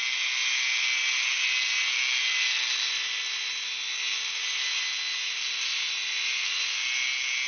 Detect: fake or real real